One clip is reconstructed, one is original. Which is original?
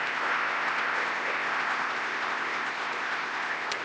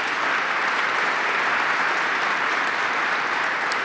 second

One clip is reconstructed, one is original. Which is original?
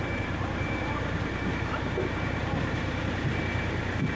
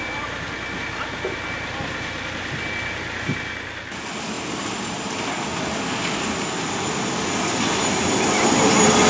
second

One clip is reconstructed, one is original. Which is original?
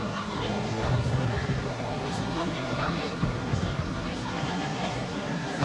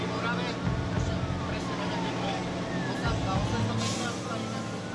second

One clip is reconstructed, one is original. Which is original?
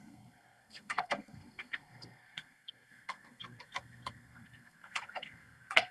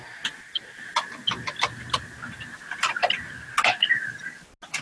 second